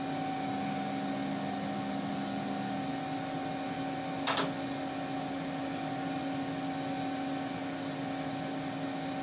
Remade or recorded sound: recorded